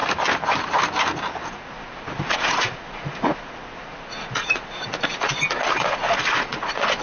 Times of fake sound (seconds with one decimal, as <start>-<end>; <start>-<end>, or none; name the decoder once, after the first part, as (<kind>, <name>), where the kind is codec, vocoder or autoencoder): 1.5-7.0 (vocoder, Vocos)

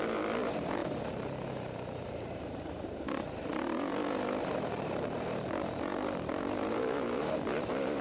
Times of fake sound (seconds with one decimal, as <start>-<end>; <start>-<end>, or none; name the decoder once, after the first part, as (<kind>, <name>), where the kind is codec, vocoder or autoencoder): 0.0-8.0 (vocoder, BigVGAN v2)

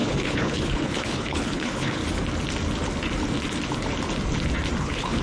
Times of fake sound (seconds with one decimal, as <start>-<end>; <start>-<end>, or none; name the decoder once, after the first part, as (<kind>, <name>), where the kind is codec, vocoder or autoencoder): 0.0-2.0 (codec, HILCodec); 4.8-5.2

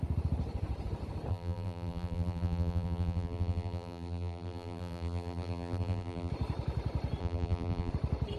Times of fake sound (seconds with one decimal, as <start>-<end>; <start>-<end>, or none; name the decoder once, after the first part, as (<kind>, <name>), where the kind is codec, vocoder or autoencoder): 1.3-6.3 (vocoder, BigVGAN v2); 7.2-7.9

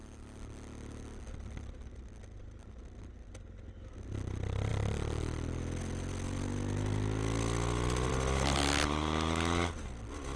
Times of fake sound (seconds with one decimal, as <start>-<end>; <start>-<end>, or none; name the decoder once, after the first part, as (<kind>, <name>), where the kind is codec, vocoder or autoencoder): none

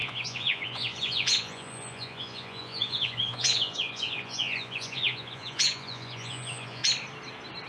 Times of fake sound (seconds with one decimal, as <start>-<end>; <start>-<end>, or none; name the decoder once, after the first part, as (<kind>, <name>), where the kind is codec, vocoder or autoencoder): 0.0-6.8 (vocoder, Vocos)

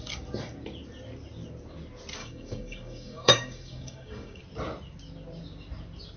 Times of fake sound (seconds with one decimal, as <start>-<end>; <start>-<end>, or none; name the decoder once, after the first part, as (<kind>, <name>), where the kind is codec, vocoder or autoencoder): 2.2-4.4 (codec, DAC)